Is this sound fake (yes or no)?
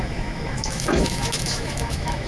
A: yes